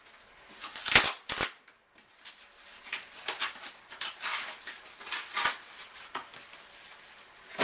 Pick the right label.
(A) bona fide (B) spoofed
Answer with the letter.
A